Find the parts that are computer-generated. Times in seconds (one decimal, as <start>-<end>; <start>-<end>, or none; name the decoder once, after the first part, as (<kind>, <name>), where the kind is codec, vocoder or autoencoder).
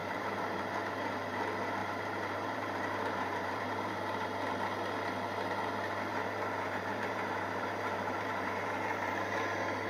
0.0-0.6 (vocoder, BigVGAN v2); 1.8-3.9; 6.1-9.1